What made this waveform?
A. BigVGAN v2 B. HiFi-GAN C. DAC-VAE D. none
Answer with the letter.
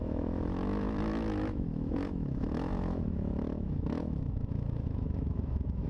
C